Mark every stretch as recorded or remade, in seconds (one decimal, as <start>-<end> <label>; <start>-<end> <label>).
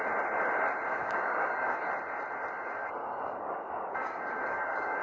0.0-0.9 recorded; 0.9-1.8 remade; 1.8-3.0 recorded; 3.0-5.0 remade